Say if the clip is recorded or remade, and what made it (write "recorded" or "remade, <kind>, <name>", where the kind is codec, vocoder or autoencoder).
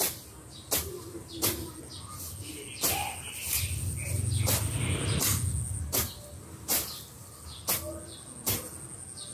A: recorded